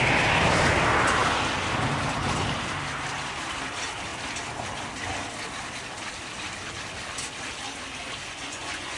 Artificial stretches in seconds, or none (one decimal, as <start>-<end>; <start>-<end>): 8.2-9.0